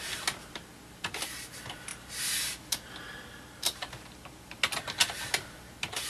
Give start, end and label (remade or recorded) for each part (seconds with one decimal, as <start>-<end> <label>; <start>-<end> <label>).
0.0-6.1 recorded